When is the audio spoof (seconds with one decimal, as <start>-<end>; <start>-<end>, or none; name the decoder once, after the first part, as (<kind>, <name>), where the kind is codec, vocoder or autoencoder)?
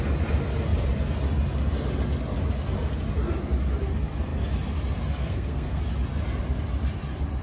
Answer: 5.2-5.8 (codec, SNAC)